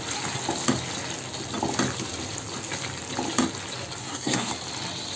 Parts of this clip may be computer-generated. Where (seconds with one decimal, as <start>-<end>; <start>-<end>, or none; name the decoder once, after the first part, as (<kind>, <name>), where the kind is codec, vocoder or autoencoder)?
4.0-4.5 (codec, SNAC)

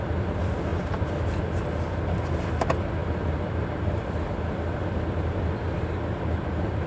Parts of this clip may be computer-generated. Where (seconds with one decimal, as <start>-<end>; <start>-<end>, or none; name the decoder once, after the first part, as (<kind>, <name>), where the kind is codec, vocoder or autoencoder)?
none

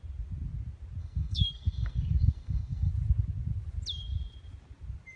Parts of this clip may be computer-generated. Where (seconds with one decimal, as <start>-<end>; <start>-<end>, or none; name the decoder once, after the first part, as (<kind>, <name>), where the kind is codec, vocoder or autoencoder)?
1.0-2.9 (codec, SNAC)

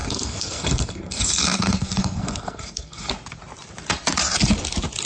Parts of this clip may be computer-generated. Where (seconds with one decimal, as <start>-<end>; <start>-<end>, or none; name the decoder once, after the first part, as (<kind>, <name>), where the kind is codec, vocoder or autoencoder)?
0.0-3.1 (codec, SNAC)

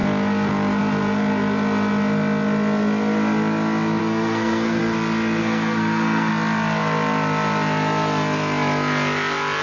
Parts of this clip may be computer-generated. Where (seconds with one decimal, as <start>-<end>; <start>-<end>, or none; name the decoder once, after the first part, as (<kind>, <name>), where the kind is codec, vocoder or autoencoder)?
4.0-4.8 (codec, SNAC); 5.4-6.3

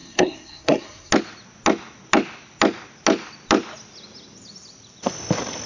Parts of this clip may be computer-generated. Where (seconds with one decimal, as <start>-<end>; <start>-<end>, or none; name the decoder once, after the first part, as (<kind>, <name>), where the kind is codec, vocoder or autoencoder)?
0.0-1.1 (codec, SNAC)

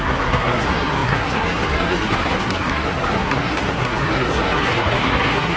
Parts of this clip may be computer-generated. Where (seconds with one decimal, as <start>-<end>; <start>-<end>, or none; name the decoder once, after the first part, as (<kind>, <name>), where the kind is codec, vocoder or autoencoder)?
0.0-5.6 (codec, SNAC)